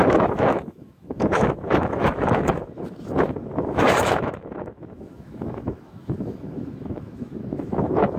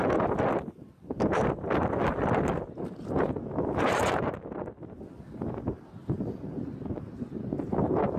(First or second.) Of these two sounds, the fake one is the first